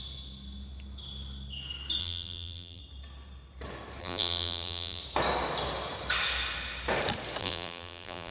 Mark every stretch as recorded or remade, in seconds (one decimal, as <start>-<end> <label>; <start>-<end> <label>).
0.0-2.0 recorded; 2.0-2.8 remade; 2.8-4.0 recorded; 4.0-5.0 remade; 5.0-7.4 recorded; 7.4-8.3 remade